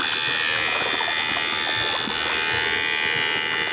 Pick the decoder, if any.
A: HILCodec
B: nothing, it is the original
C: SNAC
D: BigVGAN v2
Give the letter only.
B